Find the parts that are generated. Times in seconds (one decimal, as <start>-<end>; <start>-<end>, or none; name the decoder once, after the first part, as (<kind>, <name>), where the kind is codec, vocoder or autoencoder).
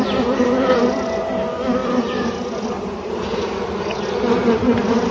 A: none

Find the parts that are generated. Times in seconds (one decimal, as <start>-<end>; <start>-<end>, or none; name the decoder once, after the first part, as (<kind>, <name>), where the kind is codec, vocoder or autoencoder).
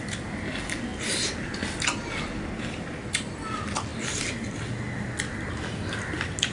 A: none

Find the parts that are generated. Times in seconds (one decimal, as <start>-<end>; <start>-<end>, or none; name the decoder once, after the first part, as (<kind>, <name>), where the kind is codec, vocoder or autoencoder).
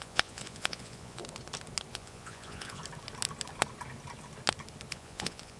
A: 0.0-1.2 (vocoder, Vocos); 1.9-2.8; 4.9-5.6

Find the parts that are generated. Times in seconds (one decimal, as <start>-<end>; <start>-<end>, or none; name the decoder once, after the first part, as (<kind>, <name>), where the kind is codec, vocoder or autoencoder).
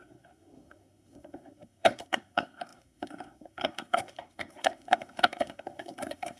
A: 0.0-6.4 (codec, SNAC)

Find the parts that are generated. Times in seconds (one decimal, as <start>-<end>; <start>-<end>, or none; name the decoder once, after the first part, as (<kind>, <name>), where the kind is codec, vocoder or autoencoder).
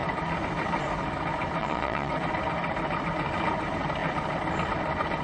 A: 1.6-2.1 (vocoder, Vocos)